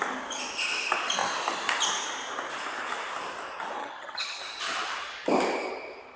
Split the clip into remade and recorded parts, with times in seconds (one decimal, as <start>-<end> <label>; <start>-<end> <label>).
0.0-3.8 recorded; 3.8-4.4 remade; 4.4-6.2 recorded